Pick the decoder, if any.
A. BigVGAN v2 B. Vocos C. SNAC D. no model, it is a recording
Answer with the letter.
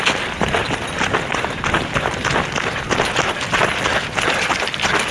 D